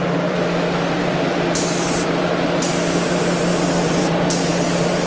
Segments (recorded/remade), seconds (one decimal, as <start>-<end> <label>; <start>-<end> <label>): 0.0-5.1 remade